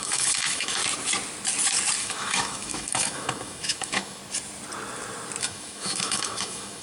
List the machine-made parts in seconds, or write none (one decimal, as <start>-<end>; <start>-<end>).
0.0-0.8; 2.0-4.2; 5.4-6.8